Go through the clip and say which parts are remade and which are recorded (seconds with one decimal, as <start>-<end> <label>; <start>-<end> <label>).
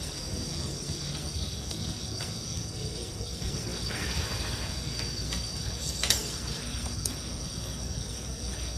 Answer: 0.0-8.8 remade